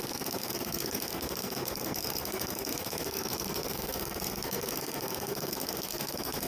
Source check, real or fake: fake